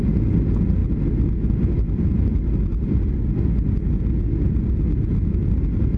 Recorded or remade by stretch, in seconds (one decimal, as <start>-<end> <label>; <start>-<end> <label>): 0.0-6.0 recorded